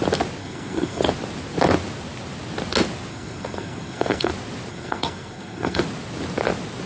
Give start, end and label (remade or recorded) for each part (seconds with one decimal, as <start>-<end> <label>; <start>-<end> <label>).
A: 0.0-0.4 recorded; 0.4-1.0 remade; 1.0-3.1 recorded; 3.1-4.3 remade; 4.3-4.7 recorded; 4.7-5.8 remade; 5.8-6.9 recorded